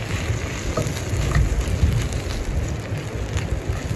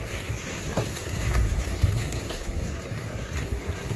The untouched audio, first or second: first